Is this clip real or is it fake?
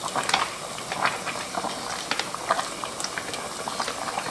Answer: real